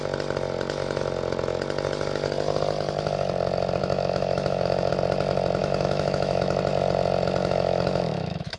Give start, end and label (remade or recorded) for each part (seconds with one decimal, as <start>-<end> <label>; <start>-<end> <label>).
0.0-3.8 recorded; 3.8-4.9 remade; 4.9-5.6 recorded; 5.6-6.6 remade; 6.6-7.4 recorded; 7.4-8.6 remade